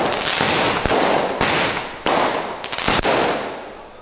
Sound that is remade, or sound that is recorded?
recorded